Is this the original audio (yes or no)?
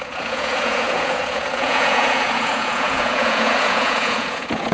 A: no